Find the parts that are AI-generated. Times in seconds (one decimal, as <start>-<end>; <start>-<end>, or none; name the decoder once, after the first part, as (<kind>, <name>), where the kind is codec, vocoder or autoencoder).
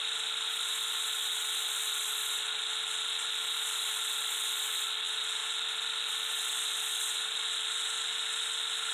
5.4-6.1 (vocoder, BigVGAN v2)